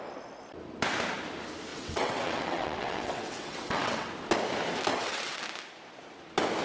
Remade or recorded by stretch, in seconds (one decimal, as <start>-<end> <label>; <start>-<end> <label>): 0.0-1.7 recorded; 1.7-4.1 remade; 4.1-4.9 recorded; 4.9-5.4 remade; 5.4-6.6 recorded